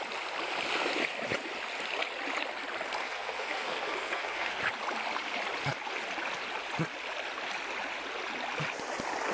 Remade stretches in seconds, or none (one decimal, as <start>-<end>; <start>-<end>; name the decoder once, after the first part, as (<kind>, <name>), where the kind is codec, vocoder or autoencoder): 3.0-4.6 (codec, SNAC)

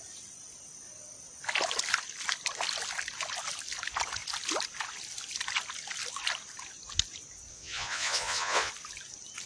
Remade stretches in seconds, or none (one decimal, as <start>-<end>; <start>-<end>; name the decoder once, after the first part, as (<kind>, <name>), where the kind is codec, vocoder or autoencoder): 7.5-8.7 (vocoder, Vocos)

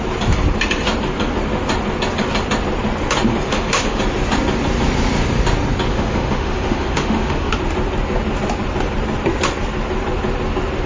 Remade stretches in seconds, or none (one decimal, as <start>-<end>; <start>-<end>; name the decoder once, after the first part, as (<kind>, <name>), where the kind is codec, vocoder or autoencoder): 3.3-4.0 (autoencoder, DAC-VAE); 5.9-7.5

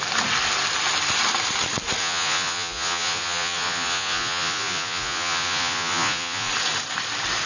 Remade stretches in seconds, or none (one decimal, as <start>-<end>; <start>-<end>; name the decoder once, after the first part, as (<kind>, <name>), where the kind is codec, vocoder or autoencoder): 2.0-6.5 (vocoder, Vocos)